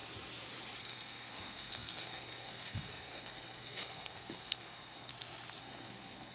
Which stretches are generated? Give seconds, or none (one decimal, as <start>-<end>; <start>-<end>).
0.8-5.1; 5.6-6.3